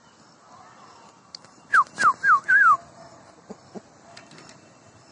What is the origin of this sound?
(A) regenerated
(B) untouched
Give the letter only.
B